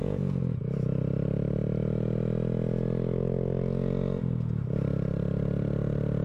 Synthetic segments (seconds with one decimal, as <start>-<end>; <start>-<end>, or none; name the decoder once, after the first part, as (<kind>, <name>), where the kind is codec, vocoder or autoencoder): 0.0-0.6 (vocoder, Vocos)